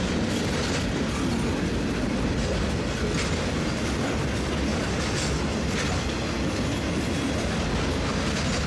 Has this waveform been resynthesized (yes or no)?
no